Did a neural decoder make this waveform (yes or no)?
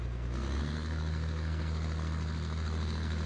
yes